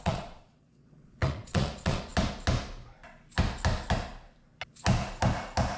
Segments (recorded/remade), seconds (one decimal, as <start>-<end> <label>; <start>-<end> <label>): 0.0-2.1 remade; 2.1-5.8 recorded